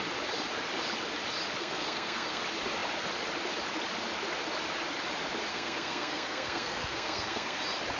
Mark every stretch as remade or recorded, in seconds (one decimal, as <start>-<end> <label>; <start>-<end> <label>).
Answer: 0.0-1.6 recorded; 1.6-2.4 remade; 2.4-5.5 recorded; 5.5-7.6 remade; 7.6-8.0 recorded

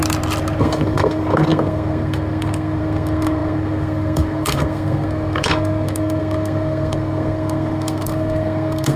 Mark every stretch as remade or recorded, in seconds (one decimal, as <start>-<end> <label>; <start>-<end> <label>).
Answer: 0.0-0.6 recorded; 0.6-9.0 remade

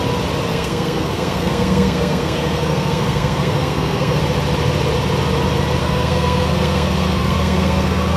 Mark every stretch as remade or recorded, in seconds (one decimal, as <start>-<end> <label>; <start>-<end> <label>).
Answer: 0.0-0.5 recorded; 0.5-4.2 remade; 4.2-5.8 recorded; 5.8-8.2 remade

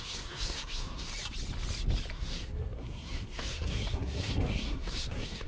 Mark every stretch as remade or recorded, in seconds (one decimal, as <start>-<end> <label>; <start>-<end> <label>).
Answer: 0.0-1.1 remade; 1.1-2.1 recorded; 2.1-5.5 remade